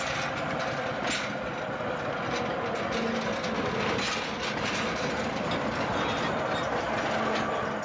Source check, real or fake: real